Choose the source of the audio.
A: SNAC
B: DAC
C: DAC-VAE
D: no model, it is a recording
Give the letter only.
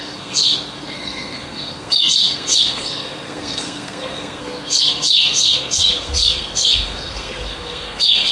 A